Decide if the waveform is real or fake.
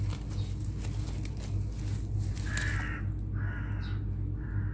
real